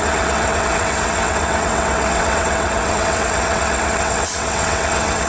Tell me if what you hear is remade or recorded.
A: remade